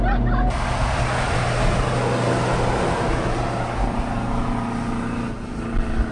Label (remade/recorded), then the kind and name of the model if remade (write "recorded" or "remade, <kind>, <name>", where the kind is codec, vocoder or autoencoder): recorded